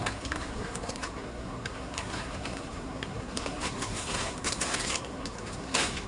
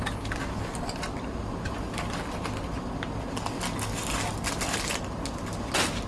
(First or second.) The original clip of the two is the second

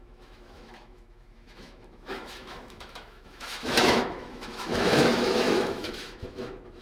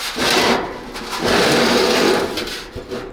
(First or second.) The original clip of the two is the second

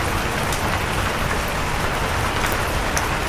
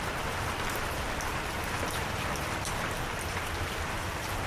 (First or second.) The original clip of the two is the first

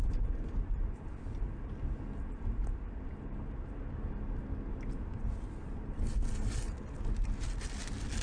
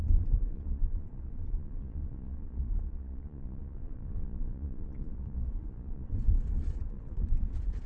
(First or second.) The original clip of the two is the first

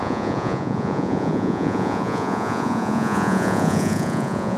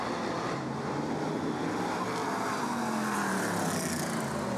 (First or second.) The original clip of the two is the second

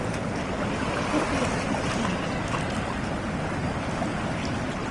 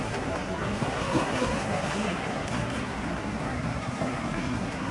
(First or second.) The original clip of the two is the first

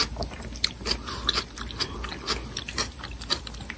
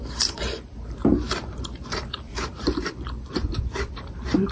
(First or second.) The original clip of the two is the first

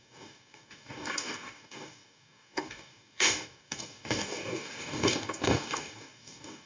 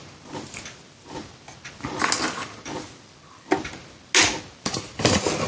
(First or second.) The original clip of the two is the second